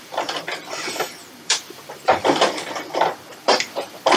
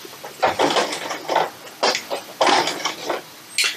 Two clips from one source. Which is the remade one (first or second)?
first